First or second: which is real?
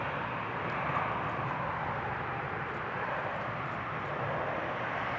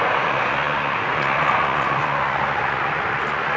first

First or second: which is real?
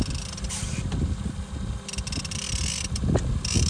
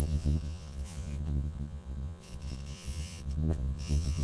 first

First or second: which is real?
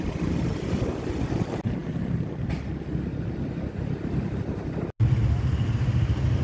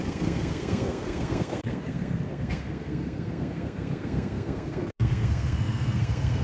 first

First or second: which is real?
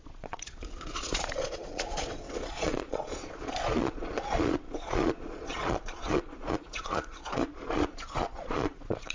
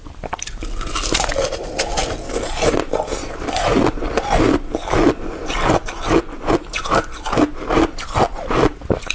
second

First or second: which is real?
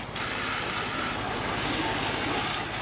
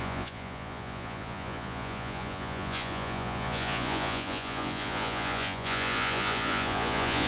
first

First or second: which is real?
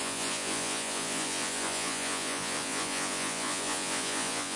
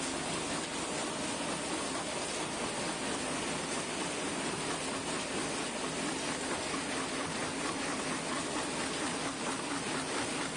second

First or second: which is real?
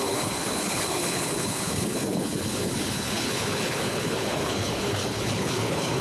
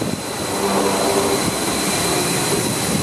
second